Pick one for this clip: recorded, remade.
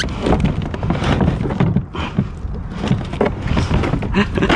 recorded